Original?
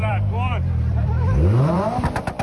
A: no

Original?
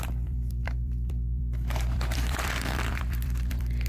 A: no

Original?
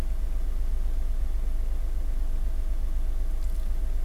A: yes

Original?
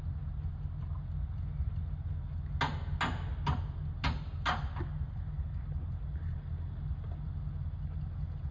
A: yes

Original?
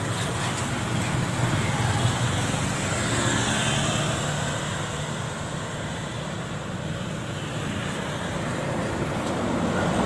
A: yes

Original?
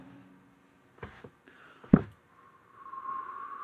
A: yes